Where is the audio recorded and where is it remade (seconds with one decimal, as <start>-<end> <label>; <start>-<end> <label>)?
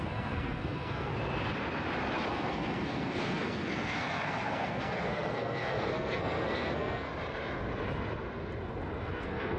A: 0.0-1.1 remade; 1.1-2.3 recorded; 2.3-7.1 remade; 7.1-9.0 recorded; 9.0-9.6 remade